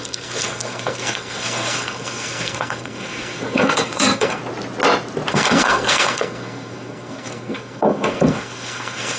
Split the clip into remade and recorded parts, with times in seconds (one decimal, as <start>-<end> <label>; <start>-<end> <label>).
0.0-4.4 remade; 4.4-5.3 recorded; 5.3-9.2 remade